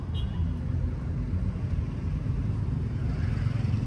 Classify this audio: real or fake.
real